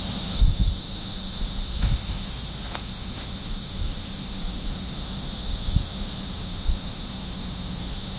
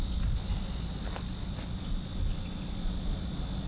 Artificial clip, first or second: first